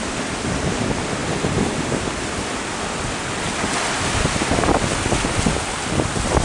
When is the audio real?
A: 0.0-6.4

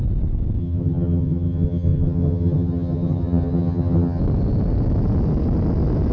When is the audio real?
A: 0.0-0.6; 4.2-6.1

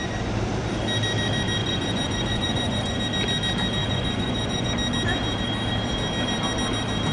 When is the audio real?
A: 0.0-1.6; 3.0-3.8; 4.7-7.1

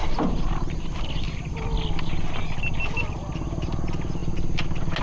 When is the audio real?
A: 0.0-5.0

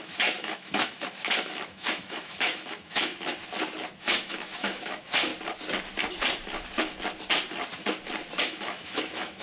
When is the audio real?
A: 3.1-4.0; 5.3-8.4

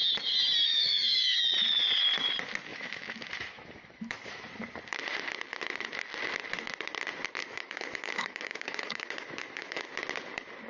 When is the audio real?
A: 0.0-0.7; 1.4-2.7; 4.4-7.4; 9.9-10.7

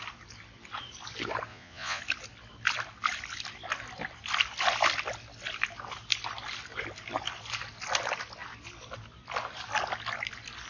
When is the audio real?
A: 0.0-1.5; 2.0-10.7

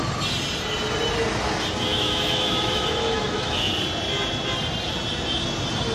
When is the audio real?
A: 0.0-1.9; 3.7-5.9